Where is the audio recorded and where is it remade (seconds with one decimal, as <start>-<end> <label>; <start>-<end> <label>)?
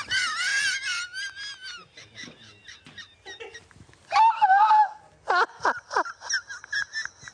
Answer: 0.0-7.3 recorded